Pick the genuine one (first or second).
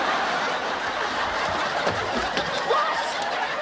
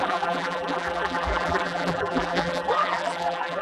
first